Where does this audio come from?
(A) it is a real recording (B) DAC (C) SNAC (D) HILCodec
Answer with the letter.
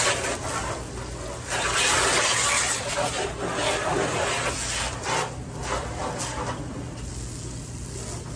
A